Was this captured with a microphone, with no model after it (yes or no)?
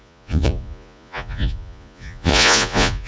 no